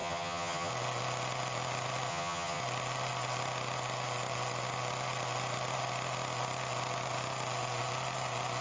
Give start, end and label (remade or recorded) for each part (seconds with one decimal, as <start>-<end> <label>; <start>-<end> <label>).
0.0-0.7 remade; 0.7-2.1 recorded; 2.1-2.6 remade; 2.6-8.6 recorded

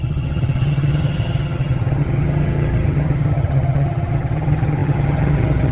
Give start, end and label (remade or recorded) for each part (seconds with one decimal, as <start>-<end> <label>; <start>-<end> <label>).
0.0-5.7 remade

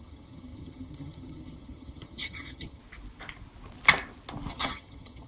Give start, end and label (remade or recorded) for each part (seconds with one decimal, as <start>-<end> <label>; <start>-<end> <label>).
0.0-2.8 remade; 2.8-4.5 recorded; 4.5-5.3 remade

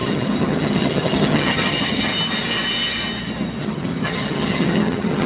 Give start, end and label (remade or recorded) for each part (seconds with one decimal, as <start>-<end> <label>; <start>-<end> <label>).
0.0-2.1 remade; 2.1-3.6 recorded; 3.6-5.3 remade

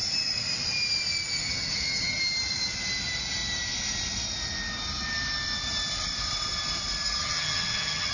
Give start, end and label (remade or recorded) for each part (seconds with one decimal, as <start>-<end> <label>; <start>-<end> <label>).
0.0-1.4 recorded; 1.4-2.2 remade; 2.2-7.2 recorded; 7.2-8.1 remade

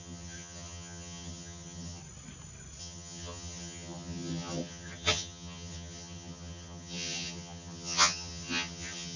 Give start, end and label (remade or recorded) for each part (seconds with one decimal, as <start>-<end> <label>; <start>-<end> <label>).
0.0-2.0 remade; 2.0-2.8 recorded; 2.8-9.2 remade

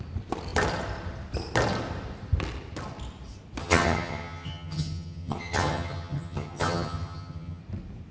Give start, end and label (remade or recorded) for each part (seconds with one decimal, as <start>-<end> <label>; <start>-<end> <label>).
0.0-3.6 recorded; 3.6-7.6 remade; 7.6-8.1 recorded

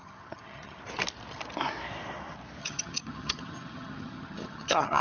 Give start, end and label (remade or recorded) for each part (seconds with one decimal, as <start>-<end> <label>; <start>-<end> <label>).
0.0-0.8 remade; 0.8-2.6 recorded; 2.6-5.0 remade